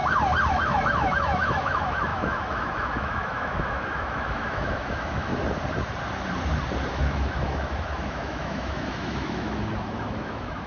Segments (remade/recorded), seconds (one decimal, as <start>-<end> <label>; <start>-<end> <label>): 0.0-0.5 recorded; 0.5-5.3 remade; 5.3-7.0 recorded; 7.0-10.7 remade